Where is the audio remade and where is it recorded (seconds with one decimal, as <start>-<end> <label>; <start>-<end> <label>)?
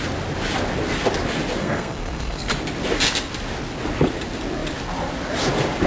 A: 0.0-1.6 recorded; 1.6-2.5 remade; 2.5-5.9 recorded